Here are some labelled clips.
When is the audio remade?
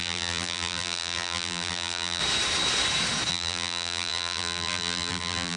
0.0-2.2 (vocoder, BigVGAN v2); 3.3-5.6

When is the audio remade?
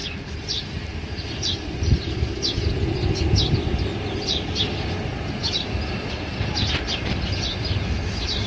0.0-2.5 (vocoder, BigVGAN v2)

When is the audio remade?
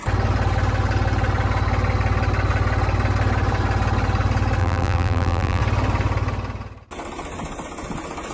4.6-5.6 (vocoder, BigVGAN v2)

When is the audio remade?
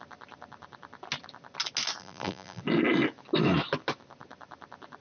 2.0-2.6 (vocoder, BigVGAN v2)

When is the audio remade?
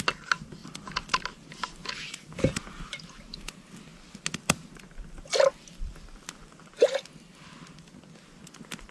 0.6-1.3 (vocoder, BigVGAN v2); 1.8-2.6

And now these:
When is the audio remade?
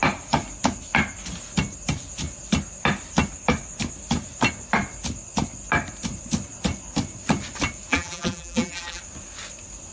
7.9-9.0 (vocoder, BigVGAN v2)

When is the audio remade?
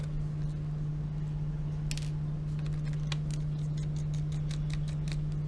none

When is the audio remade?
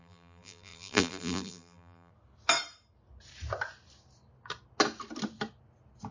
0.0-2.1 (vocoder, BigVGAN v2)